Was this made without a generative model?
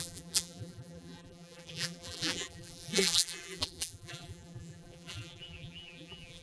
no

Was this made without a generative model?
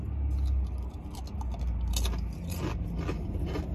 yes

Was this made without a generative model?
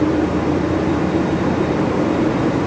yes